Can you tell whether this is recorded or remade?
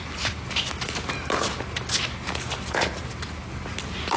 recorded